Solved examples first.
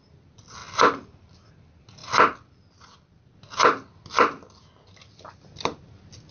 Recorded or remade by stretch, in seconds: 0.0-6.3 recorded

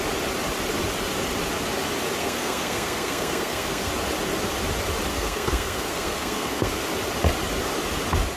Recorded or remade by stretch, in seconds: 0.0-2.2 recorded; 2.2-3.9 remade; 3.9-5.1 recorded; 5.1-6.9 remade; 6.9-8.4 recorded

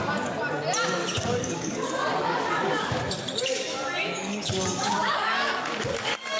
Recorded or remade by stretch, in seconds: 0.0-1.0 recorded; 1.0-3.1 remade; 3.1-3.5 recorded; 3.5-6.4 remade

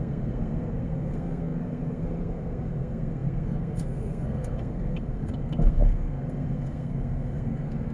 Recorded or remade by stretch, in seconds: 0.0-7.9 remade

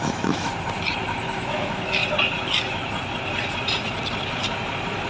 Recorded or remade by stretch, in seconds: 0.0-0.5 remade; 0.5-1.3 recorded; 1.3-2.0 remade; 2.0-5.1 recorded

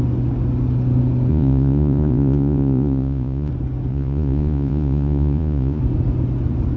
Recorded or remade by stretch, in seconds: 0.0-1.3 recorded; 1.3-3.5 remade; 3.5-3.9 recorded; 3.9-5.8 remade; 5.8-6.8 recorded